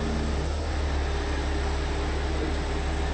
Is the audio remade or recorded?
recorded